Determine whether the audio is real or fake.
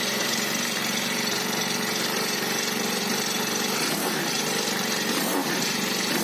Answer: fake